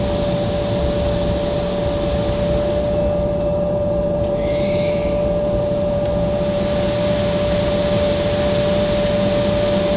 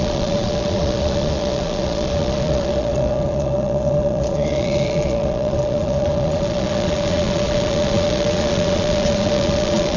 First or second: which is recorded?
first